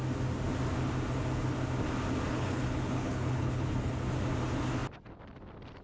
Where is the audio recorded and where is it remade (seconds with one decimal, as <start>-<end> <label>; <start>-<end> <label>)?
0.0-2.3 recorded; 2.3-3.9 remade; 3.9-5.8 recorded